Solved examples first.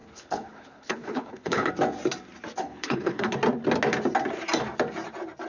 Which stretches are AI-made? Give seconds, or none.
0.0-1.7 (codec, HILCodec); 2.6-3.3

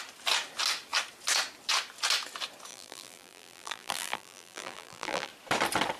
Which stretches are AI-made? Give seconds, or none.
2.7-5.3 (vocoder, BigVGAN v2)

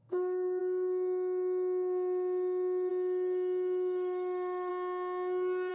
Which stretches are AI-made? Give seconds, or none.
0.0-4.7 (autoencoder, DAC-VAE)

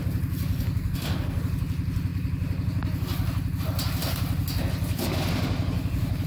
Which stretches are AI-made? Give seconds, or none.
0.5-1.4 (codec, SNAC)